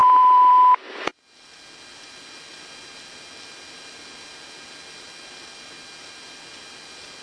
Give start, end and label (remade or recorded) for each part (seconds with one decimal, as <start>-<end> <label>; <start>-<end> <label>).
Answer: 0.0-0.5 remade; 0.5-7.2 recorded